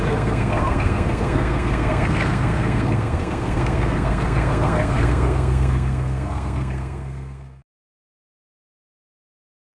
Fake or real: fake